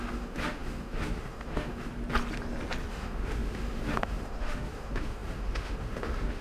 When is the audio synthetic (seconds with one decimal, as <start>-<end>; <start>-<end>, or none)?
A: 0.0-1.9; 2.9-6.4